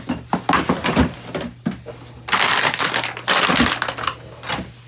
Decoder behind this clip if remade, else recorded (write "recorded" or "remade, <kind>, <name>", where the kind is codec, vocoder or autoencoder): recorded